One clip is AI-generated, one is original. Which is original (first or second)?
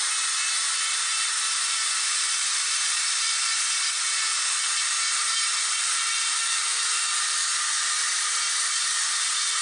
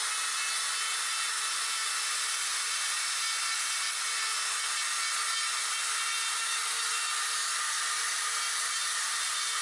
second